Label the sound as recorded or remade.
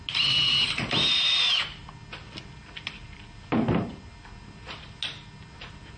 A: recorded